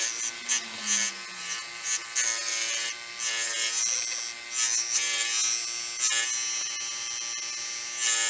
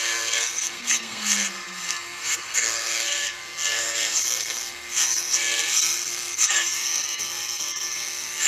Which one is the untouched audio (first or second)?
first